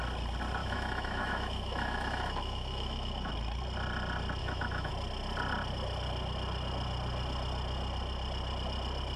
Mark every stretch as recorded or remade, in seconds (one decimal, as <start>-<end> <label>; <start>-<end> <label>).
0.0-0.6 recorded; 0.6-3.3 remade; 3.3-4.4 recorded; 4.4-4.9 remade; 4.9-9.2 recorded